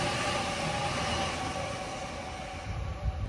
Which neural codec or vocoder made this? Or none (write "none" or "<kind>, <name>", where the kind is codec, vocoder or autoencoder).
none